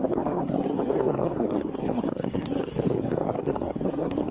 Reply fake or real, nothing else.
fake